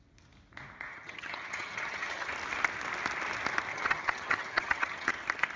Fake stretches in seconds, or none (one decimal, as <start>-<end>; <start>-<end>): 0.9-2.3; 3.7-5.1